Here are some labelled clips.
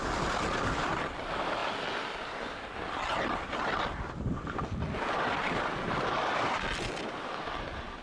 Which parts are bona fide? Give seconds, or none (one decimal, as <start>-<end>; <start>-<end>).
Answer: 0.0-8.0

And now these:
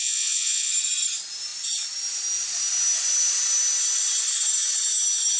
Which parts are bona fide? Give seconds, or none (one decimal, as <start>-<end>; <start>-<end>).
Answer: 0.7-5.4

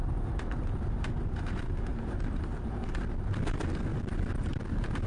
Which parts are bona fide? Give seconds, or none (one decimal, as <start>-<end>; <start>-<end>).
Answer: 0.0-1.9; 3.1-5.1